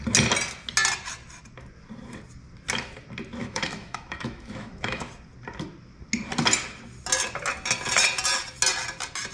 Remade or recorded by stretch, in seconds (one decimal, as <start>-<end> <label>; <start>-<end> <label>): 0.0-3.4 recorded; 3.4-5.1 remade; 5.1-9.3 recorded